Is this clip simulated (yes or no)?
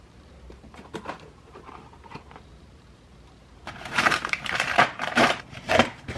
yes